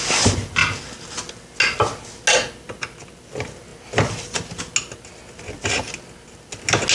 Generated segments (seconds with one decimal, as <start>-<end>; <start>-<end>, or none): none